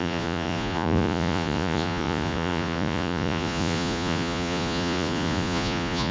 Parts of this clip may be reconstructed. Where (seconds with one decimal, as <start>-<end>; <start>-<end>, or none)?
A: 0.0-6.1